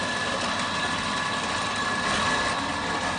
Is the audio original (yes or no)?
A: yes